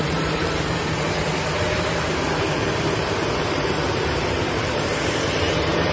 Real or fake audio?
fake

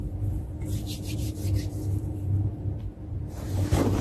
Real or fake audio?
fake